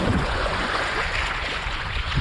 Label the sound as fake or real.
fake